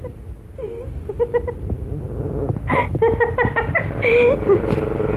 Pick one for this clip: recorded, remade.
recorded